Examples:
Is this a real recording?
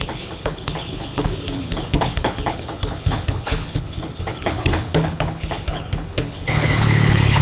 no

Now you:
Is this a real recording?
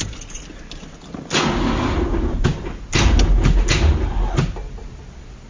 yes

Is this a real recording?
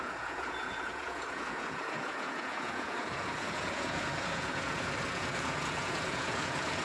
no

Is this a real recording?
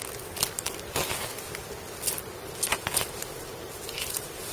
yes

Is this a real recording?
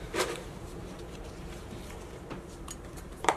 no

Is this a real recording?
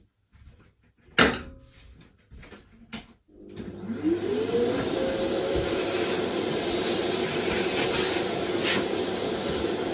yes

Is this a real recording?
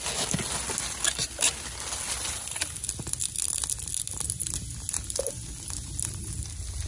yes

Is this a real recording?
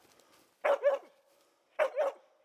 yes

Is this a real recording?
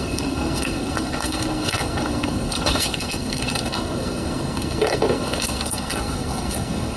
no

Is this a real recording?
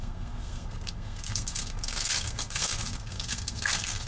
no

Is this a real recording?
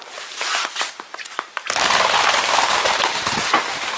no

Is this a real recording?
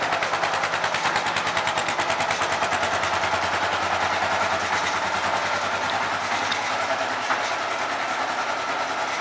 yes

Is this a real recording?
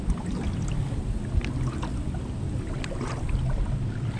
yes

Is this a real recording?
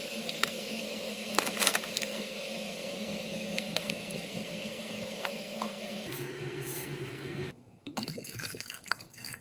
no